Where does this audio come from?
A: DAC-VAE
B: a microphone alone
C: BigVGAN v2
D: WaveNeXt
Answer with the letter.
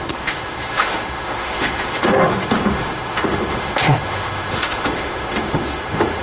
A